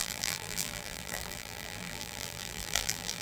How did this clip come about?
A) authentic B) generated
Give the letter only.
B